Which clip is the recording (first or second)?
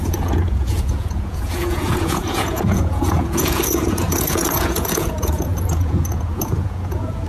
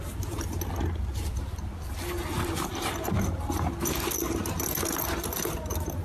second